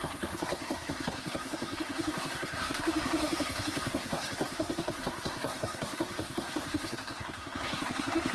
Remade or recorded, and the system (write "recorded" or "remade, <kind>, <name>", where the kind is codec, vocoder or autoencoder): remade, codec, SNAC